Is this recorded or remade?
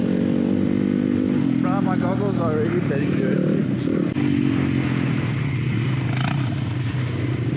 recorded